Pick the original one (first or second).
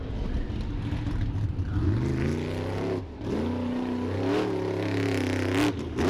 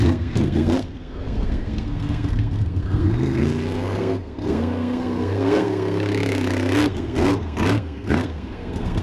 first